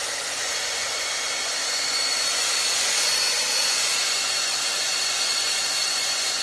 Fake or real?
fake